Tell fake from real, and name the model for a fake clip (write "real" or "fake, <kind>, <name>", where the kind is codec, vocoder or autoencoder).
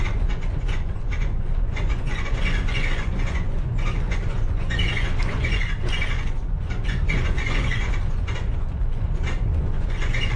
fake, vocoder, Vocos